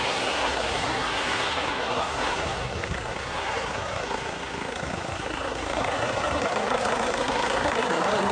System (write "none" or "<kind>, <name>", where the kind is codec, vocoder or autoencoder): codec, SNAC